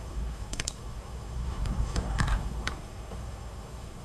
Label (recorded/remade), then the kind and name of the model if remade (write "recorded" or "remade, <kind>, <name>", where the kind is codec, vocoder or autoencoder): remade, codec, SNAC